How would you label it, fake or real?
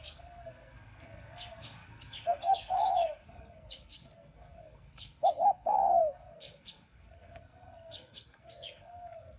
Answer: fake